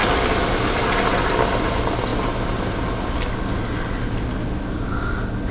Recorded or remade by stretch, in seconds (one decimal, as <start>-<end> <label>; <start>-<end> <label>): 0.0-5.5 recorded